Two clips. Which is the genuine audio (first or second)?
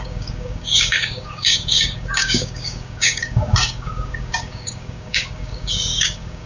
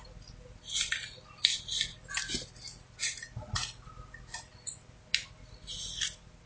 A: second